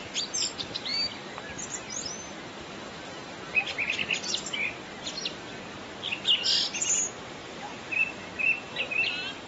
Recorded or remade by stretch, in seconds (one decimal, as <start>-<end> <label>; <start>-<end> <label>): 0.0-7.4 recorded; 7.4-8.2 remade; 8.2-9.5 recorded